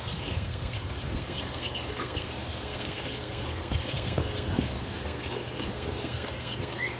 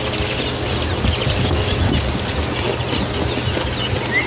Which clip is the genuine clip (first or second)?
second